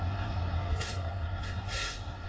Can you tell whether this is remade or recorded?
remade